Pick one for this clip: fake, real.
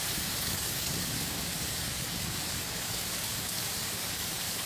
fake